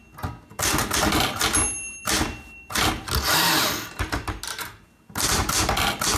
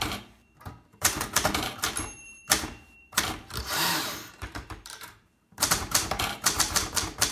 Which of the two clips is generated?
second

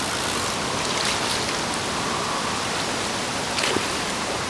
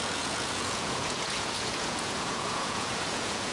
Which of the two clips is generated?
second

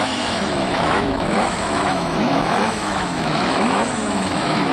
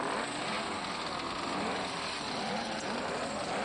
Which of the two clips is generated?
first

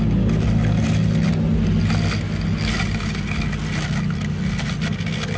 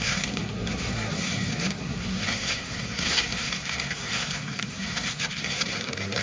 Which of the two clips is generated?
second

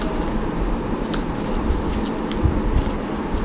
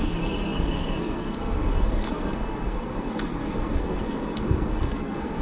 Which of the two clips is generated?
second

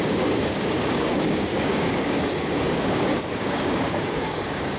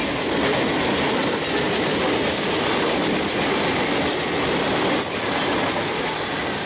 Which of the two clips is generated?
first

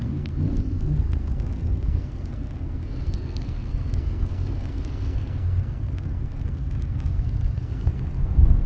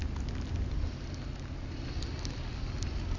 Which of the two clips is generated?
first